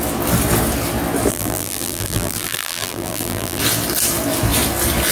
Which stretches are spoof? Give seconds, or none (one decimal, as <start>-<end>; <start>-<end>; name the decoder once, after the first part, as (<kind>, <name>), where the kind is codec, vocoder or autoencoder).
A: 1.3-3.6 (vocoder, BigVGAN v2)